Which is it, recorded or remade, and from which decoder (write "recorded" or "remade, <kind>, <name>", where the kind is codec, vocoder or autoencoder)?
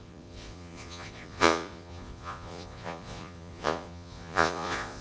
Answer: remade, vocoder, Vocos